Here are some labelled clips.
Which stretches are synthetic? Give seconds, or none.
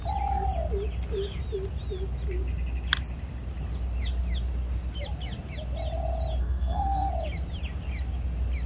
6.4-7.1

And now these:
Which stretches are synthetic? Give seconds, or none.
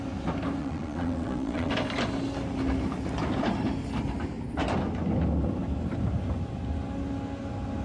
0.6-1.7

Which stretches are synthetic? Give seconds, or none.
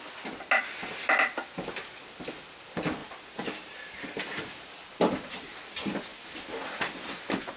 3.0-5.4; 6.1-7.6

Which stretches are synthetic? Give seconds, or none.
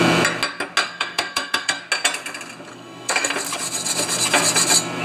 0.8-1.8; 2.7-3.3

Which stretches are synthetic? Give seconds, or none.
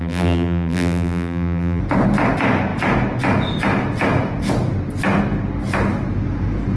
0.0-1.8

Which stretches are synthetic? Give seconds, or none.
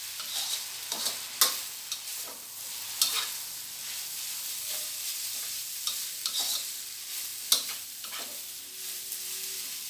none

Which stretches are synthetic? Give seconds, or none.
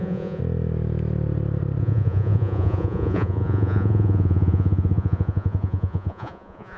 0.0-0.4; 1.8-6.8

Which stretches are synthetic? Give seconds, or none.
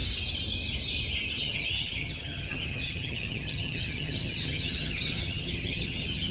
1.4-6.3